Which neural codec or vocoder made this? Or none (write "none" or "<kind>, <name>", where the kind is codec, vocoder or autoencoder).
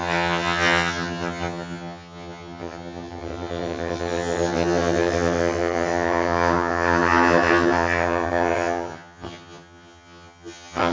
vocoder, HiFi-GAN